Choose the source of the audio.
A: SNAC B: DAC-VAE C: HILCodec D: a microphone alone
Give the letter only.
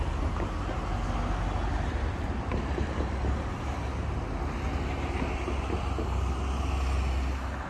D